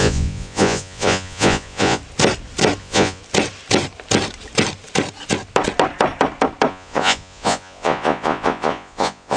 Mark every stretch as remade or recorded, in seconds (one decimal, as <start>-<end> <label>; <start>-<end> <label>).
0.0-2.0 remade; 2.0-2.8 recorded; 2.8-3.2 remade; 3.2-6.7 recorded; 6.7-9.4 remade